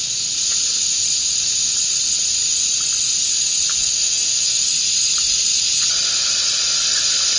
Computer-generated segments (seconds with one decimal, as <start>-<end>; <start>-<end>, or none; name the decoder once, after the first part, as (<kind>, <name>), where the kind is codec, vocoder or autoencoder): 3.8-4.6 (autoencoder, DAC-VAE)